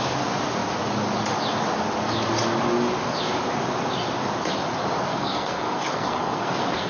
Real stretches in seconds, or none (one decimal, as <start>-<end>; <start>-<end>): 0.0-5.1

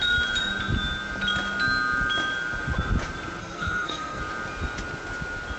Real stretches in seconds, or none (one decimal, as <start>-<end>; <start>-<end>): 0.0-3.4; 4.2-5.6

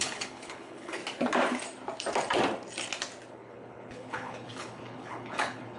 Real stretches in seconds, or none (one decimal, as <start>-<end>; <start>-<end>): 1.0-3.3

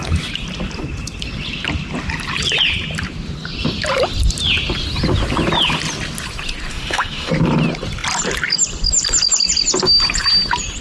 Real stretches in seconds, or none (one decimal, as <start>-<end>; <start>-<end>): 0.0-6.7; 7.3-10.8

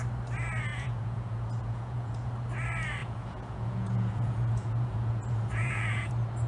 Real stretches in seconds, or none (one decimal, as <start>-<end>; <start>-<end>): 0.0-0.7; 2.3-3.0; 6.1-6.5

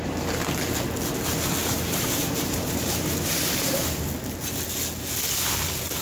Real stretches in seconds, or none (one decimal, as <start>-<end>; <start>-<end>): 0.0-1.6; 3.8-6.0

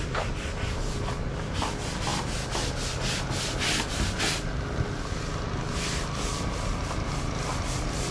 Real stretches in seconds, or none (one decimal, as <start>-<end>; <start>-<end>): 0.0-8.1

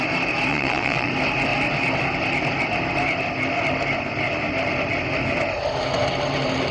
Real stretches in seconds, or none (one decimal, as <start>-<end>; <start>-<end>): 0.0-0.5; 1.1-6.7